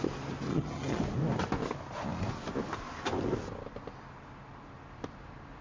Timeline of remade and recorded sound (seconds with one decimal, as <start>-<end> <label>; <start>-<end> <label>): 0.0-0.5 recorded; 0.5-1.0 remade; 1.0-5.6 recorded